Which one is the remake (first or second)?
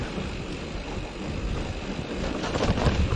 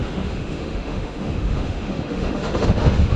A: second